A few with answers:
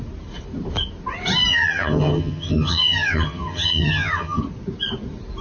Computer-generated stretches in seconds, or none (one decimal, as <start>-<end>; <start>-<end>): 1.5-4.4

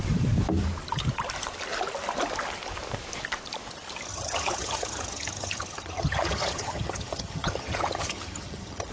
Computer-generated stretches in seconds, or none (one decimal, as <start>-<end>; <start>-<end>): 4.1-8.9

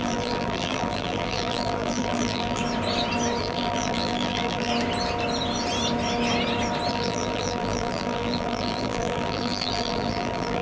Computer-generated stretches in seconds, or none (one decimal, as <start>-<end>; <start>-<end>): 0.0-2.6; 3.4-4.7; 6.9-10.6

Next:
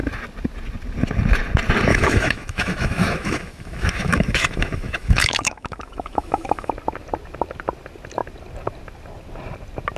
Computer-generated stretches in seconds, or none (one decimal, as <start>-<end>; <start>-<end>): 1.9-6.7

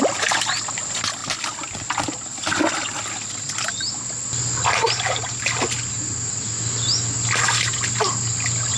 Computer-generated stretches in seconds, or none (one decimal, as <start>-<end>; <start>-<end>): none

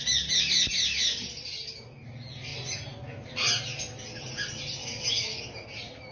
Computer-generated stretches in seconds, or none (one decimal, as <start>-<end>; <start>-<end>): 4.8-5.4

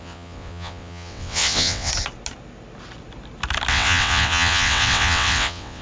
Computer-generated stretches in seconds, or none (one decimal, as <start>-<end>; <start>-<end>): 0.0-1.9; 3.7-5.8

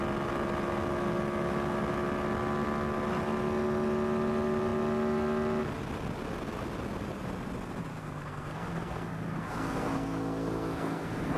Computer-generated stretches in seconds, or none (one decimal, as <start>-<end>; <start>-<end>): 7.9-11.4